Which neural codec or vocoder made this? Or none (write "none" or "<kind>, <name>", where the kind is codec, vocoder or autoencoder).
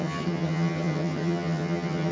vocoder, HiFi-GAN